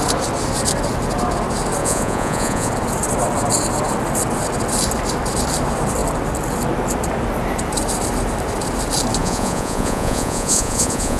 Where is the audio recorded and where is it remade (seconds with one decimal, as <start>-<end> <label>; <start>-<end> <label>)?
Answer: 0.0-1.8 recorded; 1.8-2.7 remade; 2.7-9.2 recorded; 9.2-11.2 remade